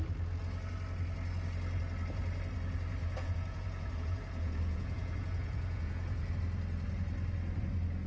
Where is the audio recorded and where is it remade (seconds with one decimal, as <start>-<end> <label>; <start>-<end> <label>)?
0.0-3.0 recorded; 3.0-6.3 remade; 6.3-8.1 recorded